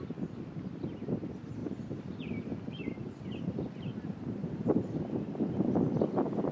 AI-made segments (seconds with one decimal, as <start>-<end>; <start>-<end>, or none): 1.6-2.2; 4.4-5.0